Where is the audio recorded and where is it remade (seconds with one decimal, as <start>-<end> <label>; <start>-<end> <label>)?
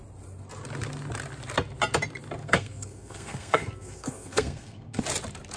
0.0-2.4 recorded; 2.4-5.0 remade; 5.0-5.6 recorded